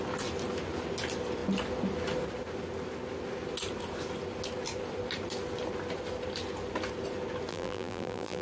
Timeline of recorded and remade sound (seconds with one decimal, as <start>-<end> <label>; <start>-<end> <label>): 0.0-7.5 recorded; 7.5-8.4 remade